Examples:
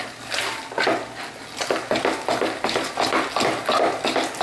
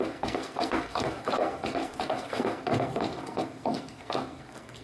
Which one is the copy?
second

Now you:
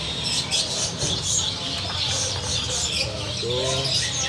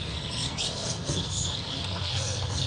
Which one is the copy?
second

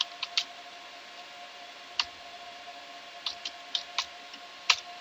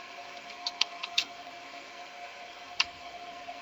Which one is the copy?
second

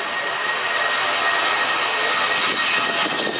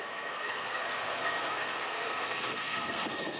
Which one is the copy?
second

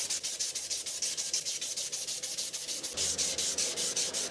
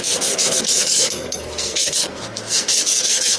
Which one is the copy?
second